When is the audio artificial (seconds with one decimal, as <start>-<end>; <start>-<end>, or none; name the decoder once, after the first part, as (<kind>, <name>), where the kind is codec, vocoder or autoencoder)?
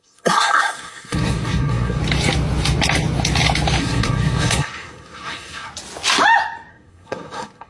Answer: 0.0-2.0 (codec, SNAC); 3.8-5.7; 6.7-7.7